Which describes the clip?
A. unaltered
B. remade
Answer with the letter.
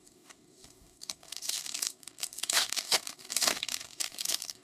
B